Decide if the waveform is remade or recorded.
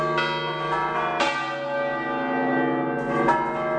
recorded